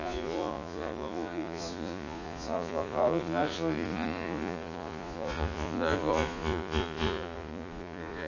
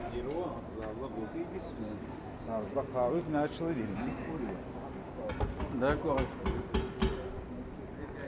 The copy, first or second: first